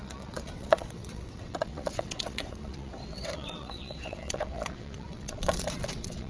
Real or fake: fake